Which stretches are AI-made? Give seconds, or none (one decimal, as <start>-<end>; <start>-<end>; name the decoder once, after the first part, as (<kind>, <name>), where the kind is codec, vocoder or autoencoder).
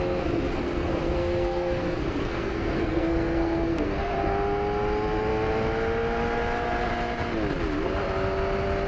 0.5-4.2 (codec, SNAC)